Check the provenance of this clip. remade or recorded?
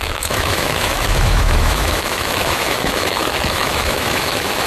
remade